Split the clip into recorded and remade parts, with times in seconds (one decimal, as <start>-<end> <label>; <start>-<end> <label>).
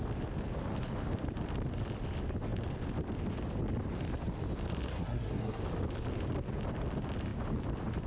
0.0-4.9 recorded; 4.9-5.6 remade; 5.6-8.1 recorded